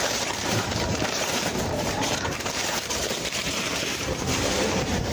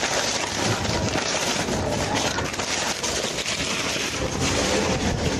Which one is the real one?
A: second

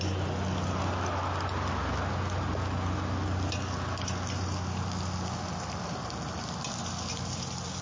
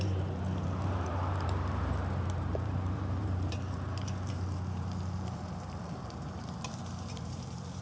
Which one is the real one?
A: first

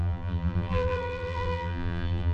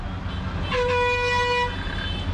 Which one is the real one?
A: second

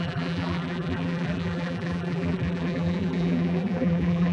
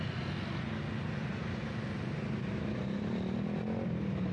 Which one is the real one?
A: second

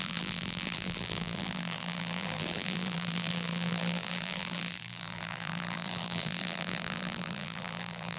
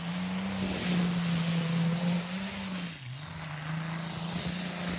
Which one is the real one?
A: second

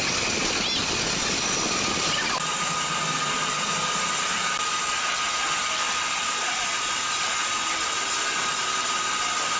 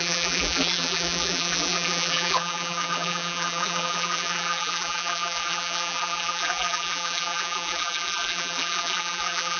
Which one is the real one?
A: first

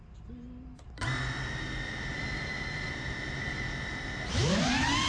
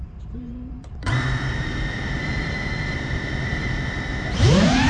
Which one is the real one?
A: first